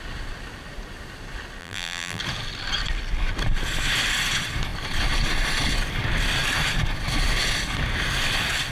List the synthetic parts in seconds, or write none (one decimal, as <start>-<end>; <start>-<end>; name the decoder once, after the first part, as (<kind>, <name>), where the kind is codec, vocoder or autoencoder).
1.6-2.2 (vocoder, BigVGAN v2)